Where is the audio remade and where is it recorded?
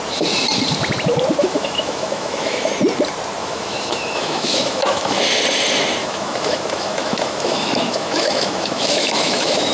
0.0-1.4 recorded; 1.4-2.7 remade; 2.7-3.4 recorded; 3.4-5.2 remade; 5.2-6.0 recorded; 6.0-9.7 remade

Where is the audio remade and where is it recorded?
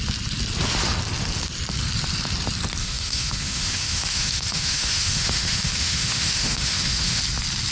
0.0-2.8 recorded; 2.8-7.2 remade; 7.2-7.7 recorded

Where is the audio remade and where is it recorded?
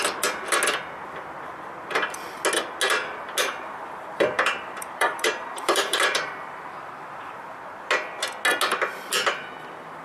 0.0-3.4 recorded; 3.4-7.4 remade; 7.4-10.0 recorded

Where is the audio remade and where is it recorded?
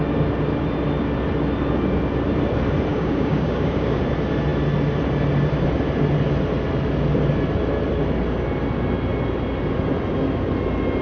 0.0-2.9 recorded; 2.9-4.0 remade; 4.0-11.0 recorded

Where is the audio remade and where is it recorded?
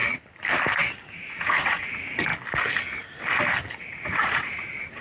0.0-1.0 recorded; 1.0-2.3 remade; 2.3-3.8 recorded; 3.8-5.0 remade